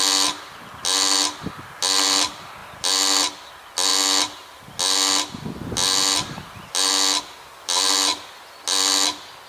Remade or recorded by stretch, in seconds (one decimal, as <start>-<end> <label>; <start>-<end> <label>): 0.0-9.5 recorded